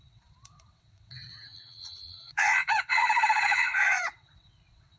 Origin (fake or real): fake